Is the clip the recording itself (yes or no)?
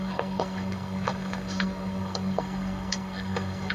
no